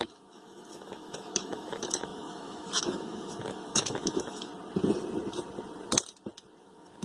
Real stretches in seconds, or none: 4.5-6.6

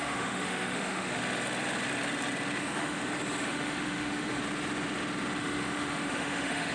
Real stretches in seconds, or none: 1.2-2.6; 3.0-3.5; 4.4-5.4